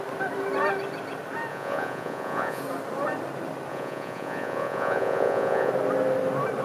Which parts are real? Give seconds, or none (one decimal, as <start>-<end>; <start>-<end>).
0.0-1.5; 2.6-3.7; 5.7-6.6